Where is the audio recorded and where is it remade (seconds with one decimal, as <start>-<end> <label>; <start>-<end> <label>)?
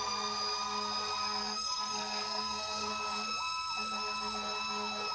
0.0-1.4 recorded; 1.4-2.9 remade; 2.9-5.1 recorded